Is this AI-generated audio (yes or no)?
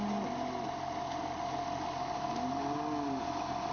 no